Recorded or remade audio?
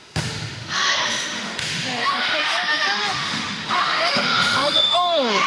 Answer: remade